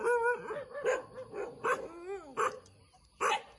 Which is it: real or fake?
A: real